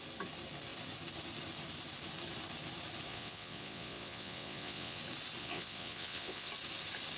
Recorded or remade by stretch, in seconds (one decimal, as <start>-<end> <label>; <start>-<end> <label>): 0.0-3.1 recorded; 3.1-5.0 remade; 5.0-5.4 recorded; 5.4-6.5 remade; 6.5-7.2 recorded

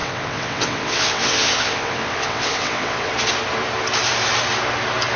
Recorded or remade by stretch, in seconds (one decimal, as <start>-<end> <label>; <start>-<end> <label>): 0.0-3.1 remade; 3.1-5.2 recorded

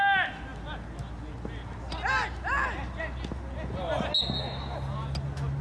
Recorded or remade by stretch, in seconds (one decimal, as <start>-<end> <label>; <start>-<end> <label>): 0.0-5.6 recorded